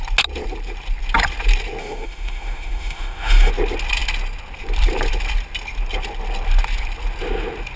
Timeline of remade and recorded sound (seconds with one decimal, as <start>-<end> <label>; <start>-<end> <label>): 0.0-1.8 recorded; 1.8-3.5 remade; 3.5-7.8 recorded